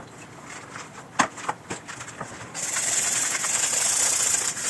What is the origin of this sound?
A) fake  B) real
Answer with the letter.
B